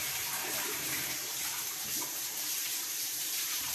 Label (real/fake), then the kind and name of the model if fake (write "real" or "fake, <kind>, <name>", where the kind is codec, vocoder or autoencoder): fake, vocoder, BigVGAN v2